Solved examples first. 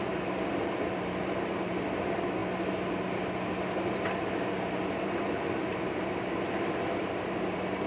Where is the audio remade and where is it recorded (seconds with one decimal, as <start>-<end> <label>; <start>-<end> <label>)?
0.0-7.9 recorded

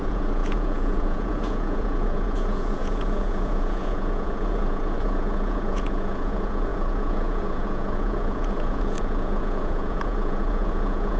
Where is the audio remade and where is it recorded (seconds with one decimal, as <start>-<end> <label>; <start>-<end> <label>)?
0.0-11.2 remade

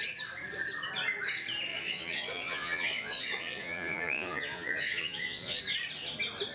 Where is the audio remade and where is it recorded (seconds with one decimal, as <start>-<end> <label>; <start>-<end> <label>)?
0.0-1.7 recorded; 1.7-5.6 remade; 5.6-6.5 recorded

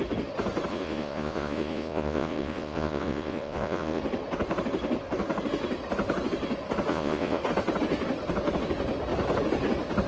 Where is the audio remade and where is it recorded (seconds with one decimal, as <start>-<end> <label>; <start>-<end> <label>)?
0.0-0.7 recorded; 0.7-4.0 remade; 4.0-6.9 recorded; 6.9-7.4 remade; 7.4-10.1 recorded

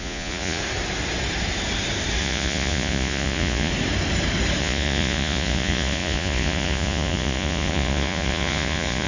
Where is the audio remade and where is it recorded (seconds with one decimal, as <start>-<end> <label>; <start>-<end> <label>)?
0.0-0.6 remade; 0.6-2.2 recorded; 2.2-3.7 remade; 3.7-4.6 recorded; 4.6-9.1 remade

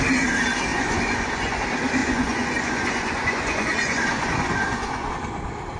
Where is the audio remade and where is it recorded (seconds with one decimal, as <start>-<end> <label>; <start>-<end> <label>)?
0.0-0.7 recorded; 0.7-1.6 remade; 1.6-2.0 recorded; 2.0-5.1 remade; 5.1-5.8 recorded

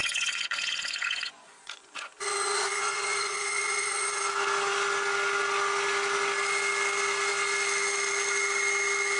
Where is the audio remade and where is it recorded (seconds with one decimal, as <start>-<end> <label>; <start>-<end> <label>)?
0.0-4.2 remade; 4.2-9.2 recorded